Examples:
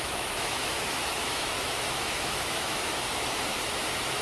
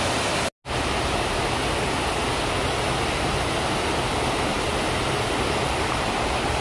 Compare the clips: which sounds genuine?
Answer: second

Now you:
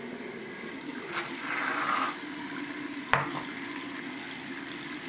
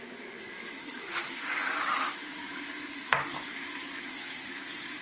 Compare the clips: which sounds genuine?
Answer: first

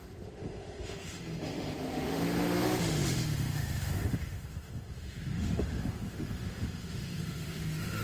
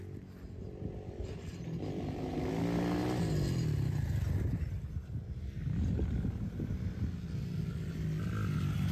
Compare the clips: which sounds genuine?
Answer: second